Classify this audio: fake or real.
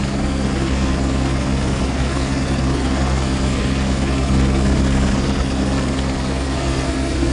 fake